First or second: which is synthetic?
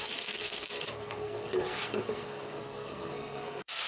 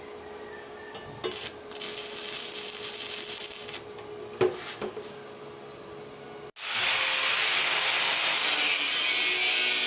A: first